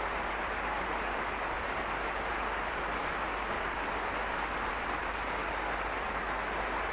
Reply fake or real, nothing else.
fake